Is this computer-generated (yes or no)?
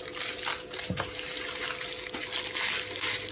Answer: no